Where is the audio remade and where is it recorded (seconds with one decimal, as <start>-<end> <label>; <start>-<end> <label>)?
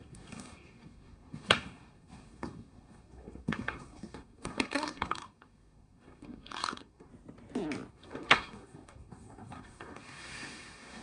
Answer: 0.0-7.1 remade; 7.1-7.9 recorded; 7.9-11.0 remade